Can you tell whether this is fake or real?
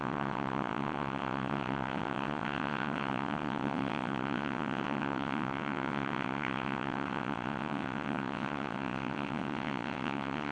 fake